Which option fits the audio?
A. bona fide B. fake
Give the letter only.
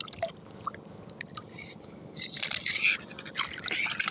A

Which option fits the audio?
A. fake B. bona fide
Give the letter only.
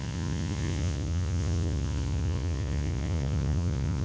A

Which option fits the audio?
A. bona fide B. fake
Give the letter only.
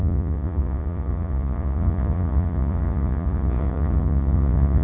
B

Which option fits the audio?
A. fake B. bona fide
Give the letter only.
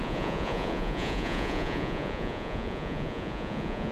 A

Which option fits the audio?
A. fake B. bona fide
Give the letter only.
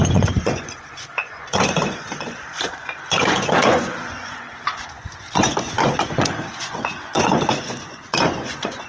A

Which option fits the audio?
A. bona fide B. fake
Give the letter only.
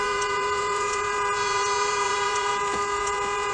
B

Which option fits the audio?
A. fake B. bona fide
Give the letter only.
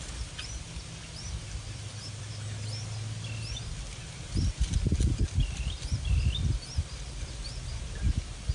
B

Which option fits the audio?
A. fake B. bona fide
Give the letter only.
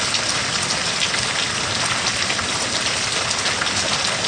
B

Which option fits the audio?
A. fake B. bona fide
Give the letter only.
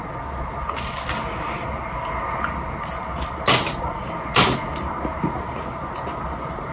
B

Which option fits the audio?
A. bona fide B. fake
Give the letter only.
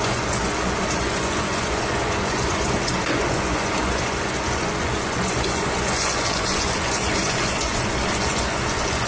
B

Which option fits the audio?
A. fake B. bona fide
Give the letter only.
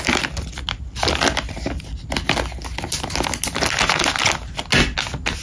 B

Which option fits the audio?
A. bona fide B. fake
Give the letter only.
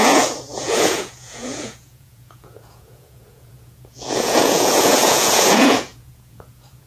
B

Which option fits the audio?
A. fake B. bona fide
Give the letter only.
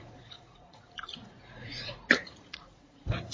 A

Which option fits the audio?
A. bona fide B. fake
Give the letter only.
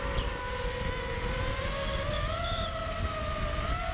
A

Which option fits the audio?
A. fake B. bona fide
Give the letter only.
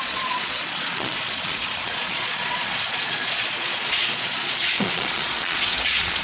A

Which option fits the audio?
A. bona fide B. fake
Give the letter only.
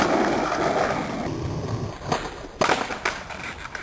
A